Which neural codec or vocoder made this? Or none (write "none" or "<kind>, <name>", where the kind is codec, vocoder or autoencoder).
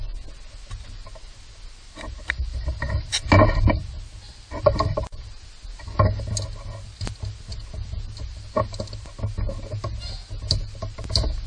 none